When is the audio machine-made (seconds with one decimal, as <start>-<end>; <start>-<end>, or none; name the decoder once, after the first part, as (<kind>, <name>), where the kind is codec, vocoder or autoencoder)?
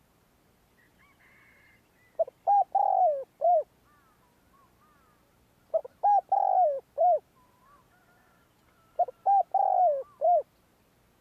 none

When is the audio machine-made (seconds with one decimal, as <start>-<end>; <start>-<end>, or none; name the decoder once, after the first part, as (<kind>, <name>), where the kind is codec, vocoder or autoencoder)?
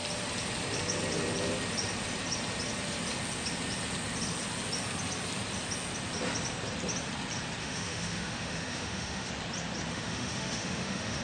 7.6-9.3 (autoencoder, DAC-VAE); 9.9-11.2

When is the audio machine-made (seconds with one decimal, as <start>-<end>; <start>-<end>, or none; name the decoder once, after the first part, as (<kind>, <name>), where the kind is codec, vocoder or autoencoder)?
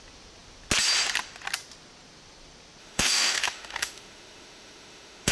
2.8-5.3 (autoencoder, DAC-VAE)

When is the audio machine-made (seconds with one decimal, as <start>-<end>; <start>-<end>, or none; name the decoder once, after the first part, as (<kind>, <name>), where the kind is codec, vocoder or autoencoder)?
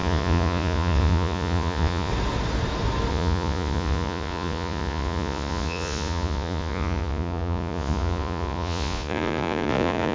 0.0-2.1 (vocoder, Vocos); 3.1-10.1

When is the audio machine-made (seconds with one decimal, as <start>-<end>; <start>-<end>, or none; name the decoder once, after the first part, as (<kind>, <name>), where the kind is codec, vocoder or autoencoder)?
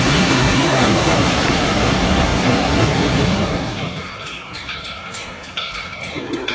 0.0-6.5 (codec, SNAC)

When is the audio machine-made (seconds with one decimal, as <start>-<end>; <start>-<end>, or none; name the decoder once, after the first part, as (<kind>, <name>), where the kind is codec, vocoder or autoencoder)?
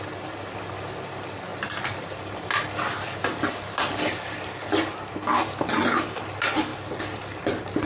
none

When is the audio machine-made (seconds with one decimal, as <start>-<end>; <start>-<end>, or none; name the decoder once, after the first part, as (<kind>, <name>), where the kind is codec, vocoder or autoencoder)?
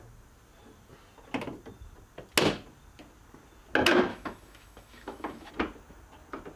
4.1-5.5 (autoencoder, DAC-VAE)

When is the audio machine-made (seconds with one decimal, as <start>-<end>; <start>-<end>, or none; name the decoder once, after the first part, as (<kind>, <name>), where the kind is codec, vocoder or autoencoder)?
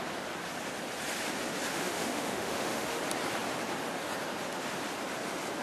1.7-3.0 (autoencoder, DAC-VAE)